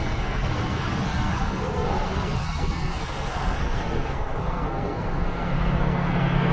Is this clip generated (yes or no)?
yes